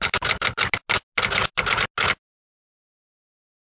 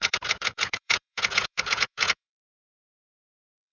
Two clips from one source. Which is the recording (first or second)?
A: first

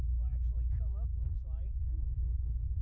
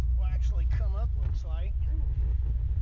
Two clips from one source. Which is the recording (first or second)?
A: second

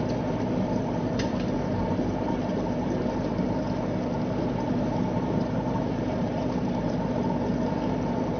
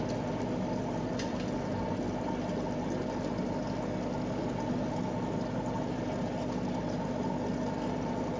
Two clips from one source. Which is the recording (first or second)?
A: second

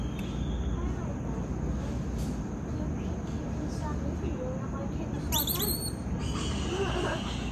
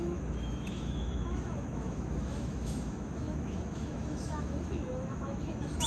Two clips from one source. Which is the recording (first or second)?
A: first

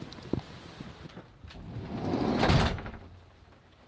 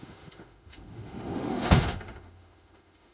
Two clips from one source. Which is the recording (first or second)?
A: first